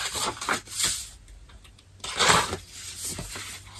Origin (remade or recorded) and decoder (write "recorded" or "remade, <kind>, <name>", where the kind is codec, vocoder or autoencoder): recorded